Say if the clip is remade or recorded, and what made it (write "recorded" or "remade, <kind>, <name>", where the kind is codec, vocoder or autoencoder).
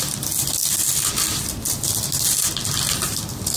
recorded